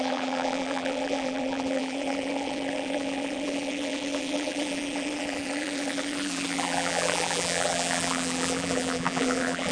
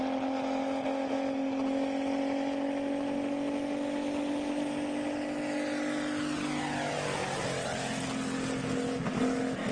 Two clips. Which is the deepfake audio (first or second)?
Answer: first